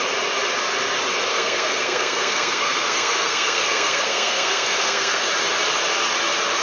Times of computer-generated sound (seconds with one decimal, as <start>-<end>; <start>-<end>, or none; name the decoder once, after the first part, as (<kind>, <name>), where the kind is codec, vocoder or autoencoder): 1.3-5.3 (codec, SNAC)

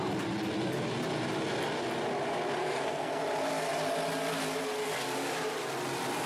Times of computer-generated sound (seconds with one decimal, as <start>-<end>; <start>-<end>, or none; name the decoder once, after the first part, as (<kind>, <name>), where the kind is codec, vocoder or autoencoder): 2.6-3.2 (codec, SNAC)

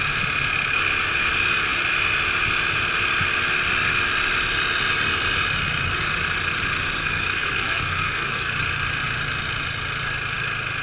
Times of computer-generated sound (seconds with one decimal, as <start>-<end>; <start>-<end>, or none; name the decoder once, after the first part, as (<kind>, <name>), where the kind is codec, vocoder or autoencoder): 7.0-8.5 (codec, SNAC)